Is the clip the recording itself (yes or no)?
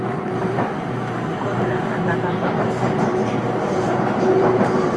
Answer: no